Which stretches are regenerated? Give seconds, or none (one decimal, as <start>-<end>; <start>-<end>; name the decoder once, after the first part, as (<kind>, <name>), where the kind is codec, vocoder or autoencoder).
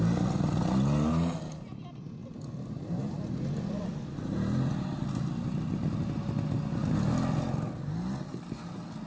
none